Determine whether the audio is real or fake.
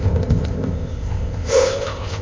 fake